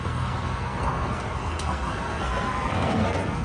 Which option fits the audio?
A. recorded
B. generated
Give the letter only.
B